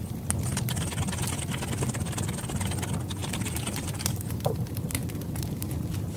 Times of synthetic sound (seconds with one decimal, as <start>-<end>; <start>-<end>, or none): 3.2-5.7